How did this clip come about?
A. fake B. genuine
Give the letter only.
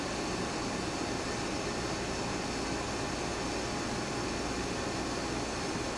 B